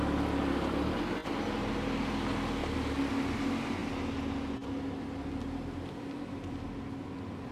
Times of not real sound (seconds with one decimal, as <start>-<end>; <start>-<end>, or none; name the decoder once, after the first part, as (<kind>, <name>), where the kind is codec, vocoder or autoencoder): none